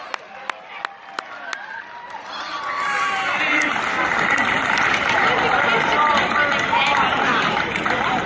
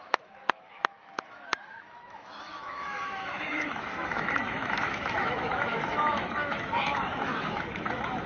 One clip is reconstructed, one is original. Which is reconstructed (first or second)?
second